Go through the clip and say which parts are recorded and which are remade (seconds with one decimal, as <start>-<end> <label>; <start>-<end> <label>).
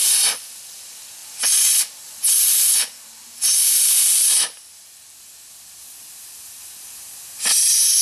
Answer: 0.0-8.0 recorded